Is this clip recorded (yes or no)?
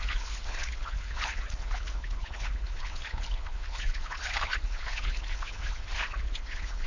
no